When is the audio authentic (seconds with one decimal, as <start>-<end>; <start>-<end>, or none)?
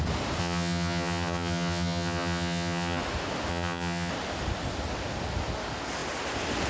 0.0-0.4; 3.0-3.5; 4.1-6.7